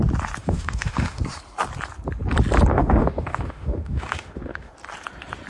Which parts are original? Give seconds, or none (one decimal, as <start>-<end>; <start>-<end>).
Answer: 0.0-0.4; 1.2-2.7; 4.7-5.5